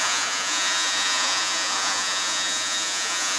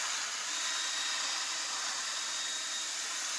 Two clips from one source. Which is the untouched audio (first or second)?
second